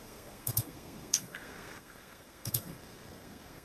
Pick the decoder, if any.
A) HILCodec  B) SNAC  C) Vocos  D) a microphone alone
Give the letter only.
B